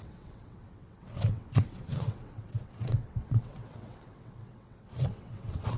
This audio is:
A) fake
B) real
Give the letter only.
A